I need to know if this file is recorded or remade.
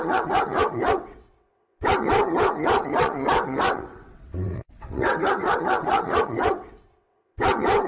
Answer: remade